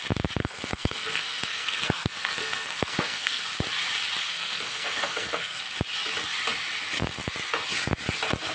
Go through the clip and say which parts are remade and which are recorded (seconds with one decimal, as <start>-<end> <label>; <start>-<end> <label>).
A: 0.0-0.4 recorded; 0.4-3.4 remade; 3.4-4.2 recorded; 4.2-5.6 remade; 5.6-8.5 recorded